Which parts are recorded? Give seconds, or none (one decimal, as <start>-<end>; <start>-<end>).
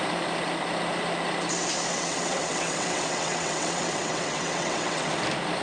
0.0-1.9; 5.1-5.6